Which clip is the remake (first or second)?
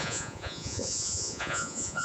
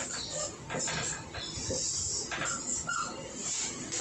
first